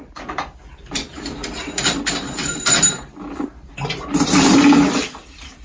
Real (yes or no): yes